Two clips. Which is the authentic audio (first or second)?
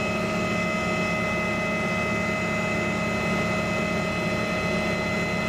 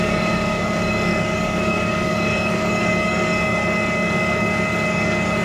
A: first